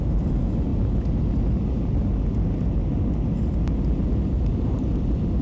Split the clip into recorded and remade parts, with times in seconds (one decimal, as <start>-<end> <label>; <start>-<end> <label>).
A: 0.0-5.4 recorded